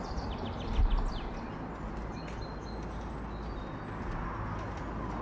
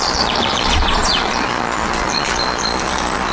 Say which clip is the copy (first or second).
second